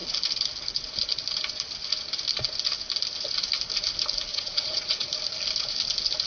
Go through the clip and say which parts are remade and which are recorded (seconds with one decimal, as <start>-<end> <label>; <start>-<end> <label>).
0.0-4.3 recorded; 4.3-5.1 remade; 5.1-6.3 recorded